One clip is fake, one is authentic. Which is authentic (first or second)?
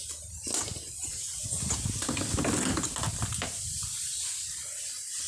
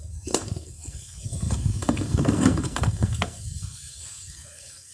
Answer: first